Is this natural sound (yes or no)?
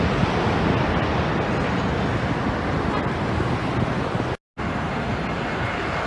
yes